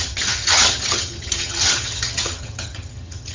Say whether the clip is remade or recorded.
remade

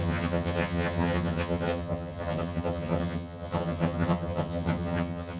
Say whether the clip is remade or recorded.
remade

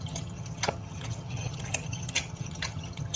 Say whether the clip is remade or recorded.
remade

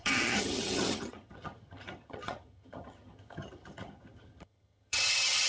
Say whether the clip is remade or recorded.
remade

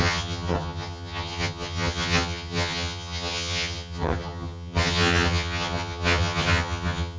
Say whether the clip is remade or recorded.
remade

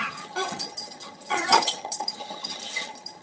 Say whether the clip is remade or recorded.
remade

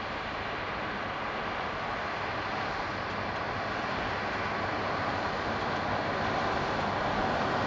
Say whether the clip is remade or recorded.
recorded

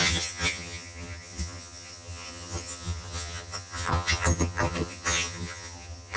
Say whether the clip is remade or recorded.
remade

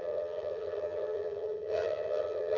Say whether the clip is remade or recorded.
remade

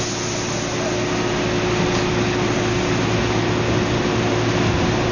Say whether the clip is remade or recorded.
recorded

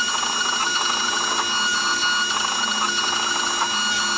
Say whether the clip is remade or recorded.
recorded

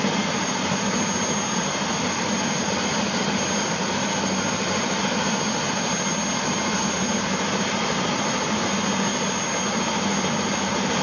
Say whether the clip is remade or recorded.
recorded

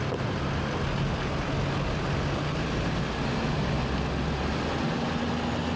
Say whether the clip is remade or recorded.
recorded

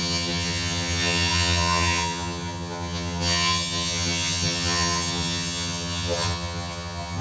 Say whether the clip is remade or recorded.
remade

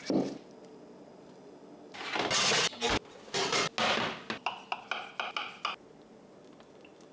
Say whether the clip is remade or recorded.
recorded